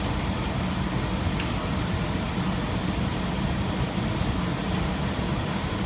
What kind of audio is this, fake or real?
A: real